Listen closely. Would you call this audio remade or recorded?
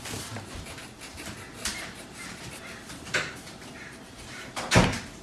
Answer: recorded